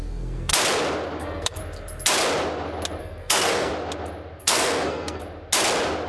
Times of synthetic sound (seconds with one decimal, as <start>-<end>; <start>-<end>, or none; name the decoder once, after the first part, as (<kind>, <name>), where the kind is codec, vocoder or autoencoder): 0.0-0.5 (codec, SNAC); 1.2-1.6; 3.0-3.7; 4.4-5.2